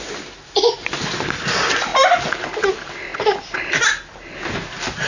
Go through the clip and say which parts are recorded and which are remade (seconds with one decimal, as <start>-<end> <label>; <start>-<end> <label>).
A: 0.0-5.1 recorded